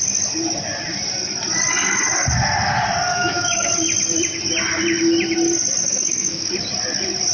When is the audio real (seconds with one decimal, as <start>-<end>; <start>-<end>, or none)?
0.0-3.1; 3.7-5.8; 6.5-7.3